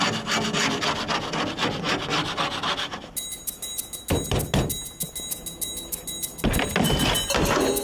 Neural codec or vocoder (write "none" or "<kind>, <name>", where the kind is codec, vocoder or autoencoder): none